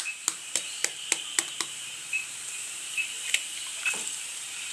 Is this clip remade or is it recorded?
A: remade